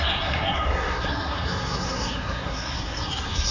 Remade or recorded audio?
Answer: remade